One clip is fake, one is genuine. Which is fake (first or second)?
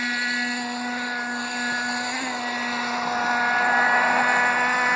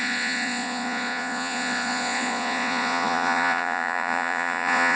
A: second